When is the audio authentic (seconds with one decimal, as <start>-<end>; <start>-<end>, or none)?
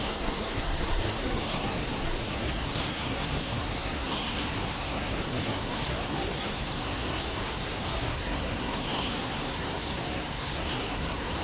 none